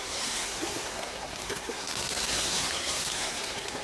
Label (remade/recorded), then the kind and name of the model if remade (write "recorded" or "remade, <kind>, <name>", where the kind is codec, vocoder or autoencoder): remade, codec, SNAC